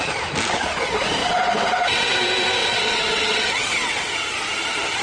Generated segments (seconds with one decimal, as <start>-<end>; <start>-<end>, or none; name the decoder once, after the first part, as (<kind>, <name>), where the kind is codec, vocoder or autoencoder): 1.2-2.1 (vocoder, WaveNeXt); 2.6-4.1